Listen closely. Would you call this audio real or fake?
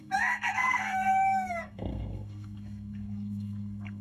fake